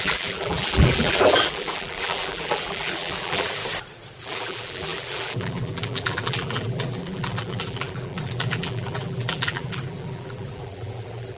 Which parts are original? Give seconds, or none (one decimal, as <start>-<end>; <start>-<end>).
3.6-4.2

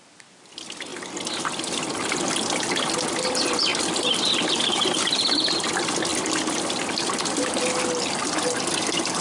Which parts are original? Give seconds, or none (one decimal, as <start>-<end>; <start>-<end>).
0.0-9.2

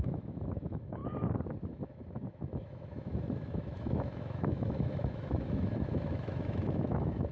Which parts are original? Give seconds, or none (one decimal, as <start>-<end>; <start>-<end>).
1.0-1.7

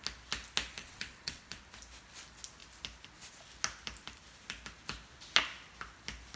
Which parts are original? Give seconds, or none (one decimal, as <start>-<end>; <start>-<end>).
0.0-0.8; 1.6-6.4

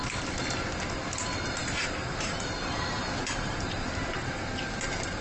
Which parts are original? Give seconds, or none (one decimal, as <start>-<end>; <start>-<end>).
0.0-5.2

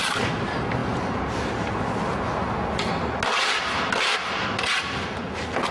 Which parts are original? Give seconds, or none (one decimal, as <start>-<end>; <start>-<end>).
0.0-5.7

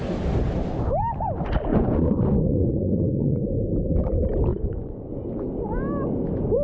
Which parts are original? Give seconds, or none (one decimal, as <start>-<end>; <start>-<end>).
0.0-1.7; 3.4-4.5; 5.1-6.6